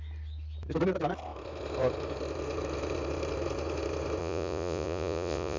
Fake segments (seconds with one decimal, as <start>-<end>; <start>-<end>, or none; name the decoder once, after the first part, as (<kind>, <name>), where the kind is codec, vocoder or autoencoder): 4.2-5.6 (vocoder, Vocos)